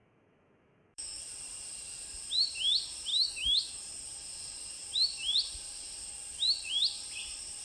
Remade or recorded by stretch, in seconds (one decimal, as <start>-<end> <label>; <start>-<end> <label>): 0.0-1.2 remade; 1.2-3.1 recorded; 3.1-4.0 remade; 4.0-7.6 recorded